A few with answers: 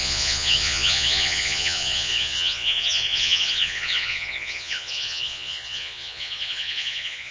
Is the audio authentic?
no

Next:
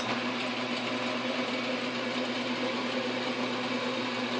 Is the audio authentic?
yes